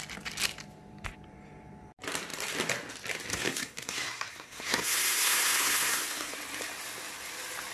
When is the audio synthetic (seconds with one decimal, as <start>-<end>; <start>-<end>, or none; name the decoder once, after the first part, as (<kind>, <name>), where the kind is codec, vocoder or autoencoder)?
3.3-6.3 (codec, SNAC)